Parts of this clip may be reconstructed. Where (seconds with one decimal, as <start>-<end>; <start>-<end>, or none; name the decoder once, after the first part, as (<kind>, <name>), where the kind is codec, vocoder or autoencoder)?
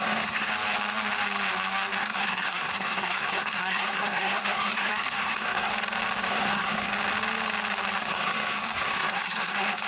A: 0.0-0.5 (codec, SNAC); 2.0-5.7; 6.3-6.9; 8.0-9.9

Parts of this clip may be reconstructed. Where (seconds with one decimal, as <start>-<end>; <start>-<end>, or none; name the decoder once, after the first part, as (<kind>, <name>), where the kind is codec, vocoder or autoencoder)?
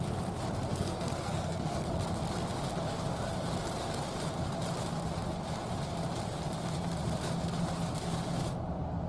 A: 0.7-1.9 (codec, SNAC)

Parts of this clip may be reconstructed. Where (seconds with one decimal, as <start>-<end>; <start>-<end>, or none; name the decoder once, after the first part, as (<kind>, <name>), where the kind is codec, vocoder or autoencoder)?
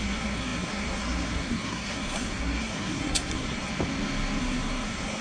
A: 0.0-3.7 (codec, SNAC); 4.4-5.2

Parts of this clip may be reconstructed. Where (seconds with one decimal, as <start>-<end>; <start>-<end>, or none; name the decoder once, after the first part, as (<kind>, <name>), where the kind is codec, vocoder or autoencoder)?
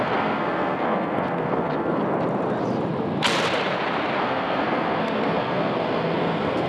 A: 0.0-2.0 (codec, SNAC); 4.2-6.7